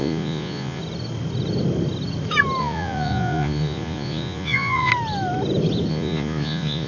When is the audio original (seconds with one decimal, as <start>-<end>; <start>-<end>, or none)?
0.8-2.6; 4.9-5.9